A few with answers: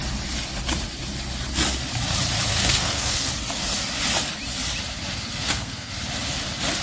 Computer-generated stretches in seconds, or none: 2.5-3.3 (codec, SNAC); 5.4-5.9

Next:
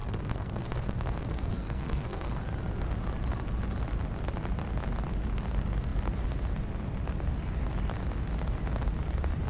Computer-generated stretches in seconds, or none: 0.0-2.4 (codec, SNAC)

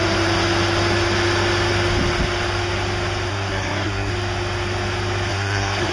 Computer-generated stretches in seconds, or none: 3.3-4.1 (codec, SNAC); 5.3-5.9

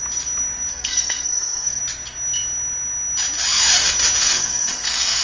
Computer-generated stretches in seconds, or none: 0.7-1.8 (codec, SNAC); 4.2-5.2

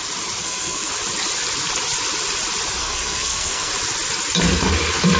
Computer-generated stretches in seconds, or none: 0.4-0.9 (codec, SNAC); 2.8-3.7

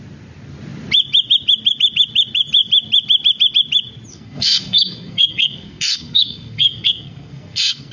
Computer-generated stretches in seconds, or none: 4.1-7.9 (codec, SNAC)

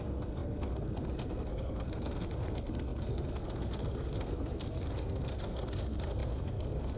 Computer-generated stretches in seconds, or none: 0.0-7.0 (codec, SNAC)